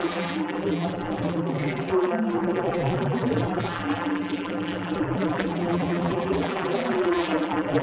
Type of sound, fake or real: fake